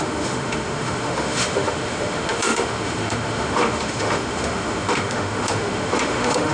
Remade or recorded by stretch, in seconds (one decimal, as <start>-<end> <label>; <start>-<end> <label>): 0.0-6.5 remade